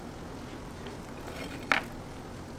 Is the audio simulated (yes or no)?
no